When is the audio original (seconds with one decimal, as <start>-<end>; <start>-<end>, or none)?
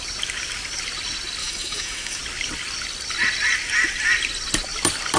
0.0-1.4; 2.2-5.2